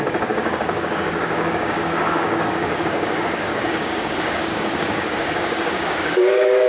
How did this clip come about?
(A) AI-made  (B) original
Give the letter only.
A